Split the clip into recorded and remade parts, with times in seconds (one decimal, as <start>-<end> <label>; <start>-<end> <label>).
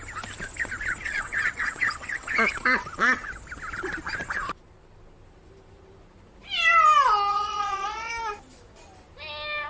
0.0-1.0 recorded; 1.0-3.3 remade; 3.3-7.3 recorded; 7.3-8.1 remade; 8.1-9.7 recorded